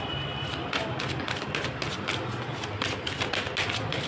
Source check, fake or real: real